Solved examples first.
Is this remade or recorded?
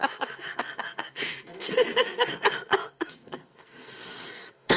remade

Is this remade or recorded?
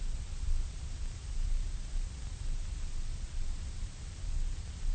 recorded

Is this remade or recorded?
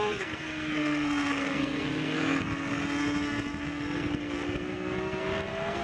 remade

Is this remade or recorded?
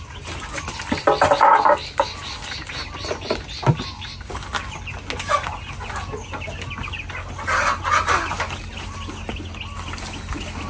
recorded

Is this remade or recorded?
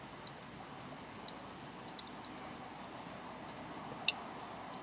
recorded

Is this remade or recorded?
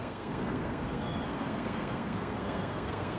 remade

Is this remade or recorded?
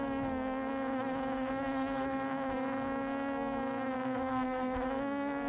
remade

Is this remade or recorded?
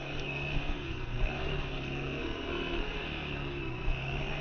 remade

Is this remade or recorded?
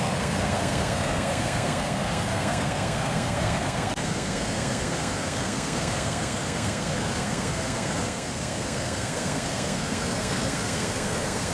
remade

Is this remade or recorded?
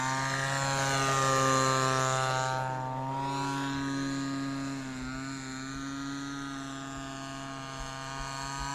recorded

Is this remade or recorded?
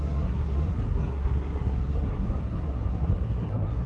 remade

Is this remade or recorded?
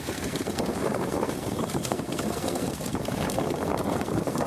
remade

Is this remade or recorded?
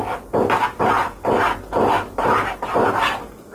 recorded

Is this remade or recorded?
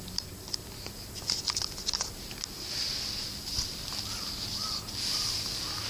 recorded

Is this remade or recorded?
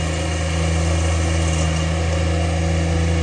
recorded